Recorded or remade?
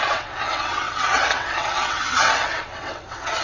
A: remade